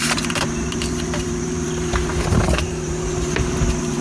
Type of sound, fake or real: fake